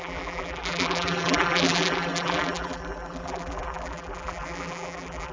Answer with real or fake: fake